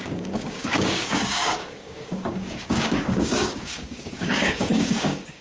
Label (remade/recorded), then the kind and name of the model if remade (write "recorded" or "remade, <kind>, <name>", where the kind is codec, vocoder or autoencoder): remade, codec, DAC